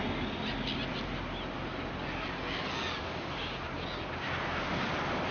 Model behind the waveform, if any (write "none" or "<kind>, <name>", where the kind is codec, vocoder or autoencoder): none